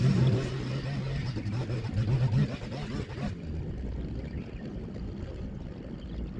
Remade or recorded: recorded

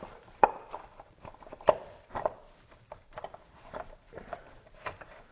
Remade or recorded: remade